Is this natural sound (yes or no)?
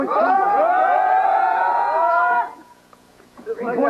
no